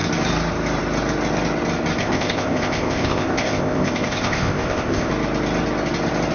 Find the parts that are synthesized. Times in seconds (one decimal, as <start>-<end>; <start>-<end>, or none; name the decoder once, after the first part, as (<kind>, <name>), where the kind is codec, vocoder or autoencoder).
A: 2.0-5.1 (codec, ZipCodec)

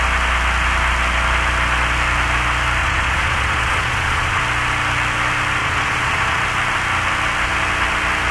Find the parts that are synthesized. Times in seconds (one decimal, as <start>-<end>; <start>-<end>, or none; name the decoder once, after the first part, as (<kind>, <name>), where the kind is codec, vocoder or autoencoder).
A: 2.8-4.4 (vocoder, Vocos); 5.6-6.4

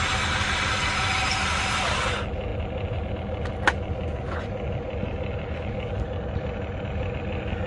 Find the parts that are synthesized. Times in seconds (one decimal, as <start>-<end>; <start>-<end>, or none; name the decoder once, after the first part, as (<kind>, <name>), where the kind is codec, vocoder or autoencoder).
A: none

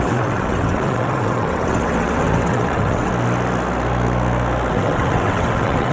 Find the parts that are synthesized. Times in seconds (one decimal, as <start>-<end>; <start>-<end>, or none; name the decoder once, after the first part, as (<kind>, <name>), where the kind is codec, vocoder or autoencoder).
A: 0.0-3.1 (vocoder, WaveNeXt); 4.7-5.9

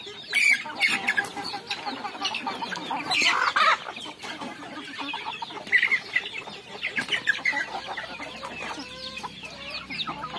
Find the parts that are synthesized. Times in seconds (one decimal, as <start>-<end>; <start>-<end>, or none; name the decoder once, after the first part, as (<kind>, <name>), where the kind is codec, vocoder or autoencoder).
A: none